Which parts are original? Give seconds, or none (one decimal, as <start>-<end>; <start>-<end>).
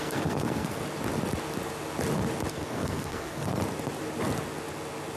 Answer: 0.8-2.5; 3.6-5.2